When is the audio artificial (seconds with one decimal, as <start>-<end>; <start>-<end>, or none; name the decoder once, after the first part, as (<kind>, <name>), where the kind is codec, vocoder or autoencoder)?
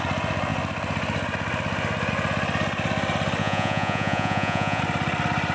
3.4-4.8 (vocoder, Vocos)